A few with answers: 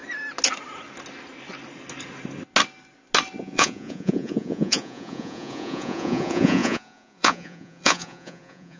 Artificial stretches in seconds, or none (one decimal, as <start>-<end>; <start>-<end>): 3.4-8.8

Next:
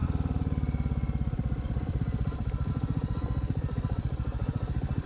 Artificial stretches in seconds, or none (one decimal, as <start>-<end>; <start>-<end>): 0.0-5.1

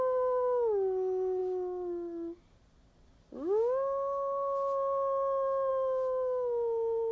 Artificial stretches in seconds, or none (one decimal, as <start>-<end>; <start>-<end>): none

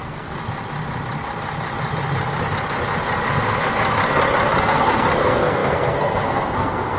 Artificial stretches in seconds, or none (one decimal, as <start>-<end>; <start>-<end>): 0.0-0.4; 4.6-7.0